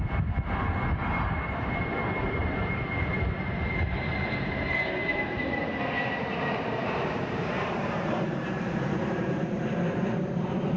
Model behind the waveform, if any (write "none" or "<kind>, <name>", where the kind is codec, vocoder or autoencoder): vocoder, BigVGAN v2